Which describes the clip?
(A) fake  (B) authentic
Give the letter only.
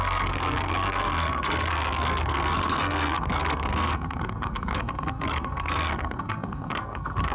A